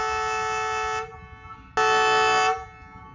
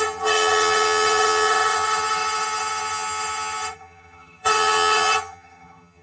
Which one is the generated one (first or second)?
second